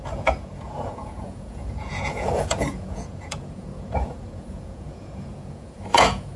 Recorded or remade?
remade